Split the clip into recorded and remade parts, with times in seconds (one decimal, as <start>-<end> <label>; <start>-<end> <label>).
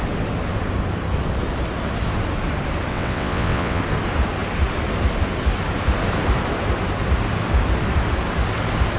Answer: 0.0-2.9 recorded; 2.9-3.8 remade; 3.8-9.0 recorded